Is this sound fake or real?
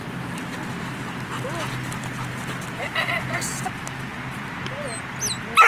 real